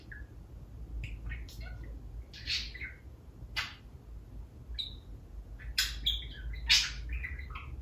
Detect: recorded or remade recorded